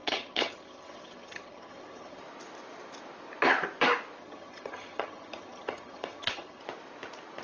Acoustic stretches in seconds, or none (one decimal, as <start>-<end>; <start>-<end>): 2.2-4.2; 6.6-7.4

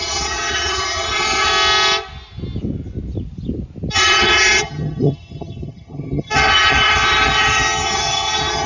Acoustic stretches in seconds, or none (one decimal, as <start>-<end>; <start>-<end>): 1.5-3.9

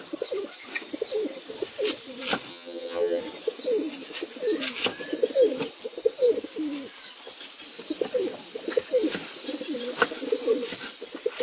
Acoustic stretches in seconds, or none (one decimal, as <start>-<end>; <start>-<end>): 0.0-2.5; 3.2-11.4

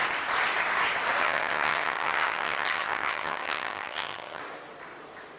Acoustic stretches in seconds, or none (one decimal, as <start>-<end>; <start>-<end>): 0.0-1.2; 4.4-5.4